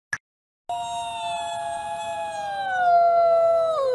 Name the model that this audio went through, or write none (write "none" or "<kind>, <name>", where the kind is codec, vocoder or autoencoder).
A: none